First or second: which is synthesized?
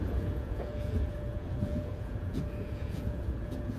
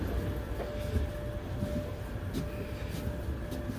first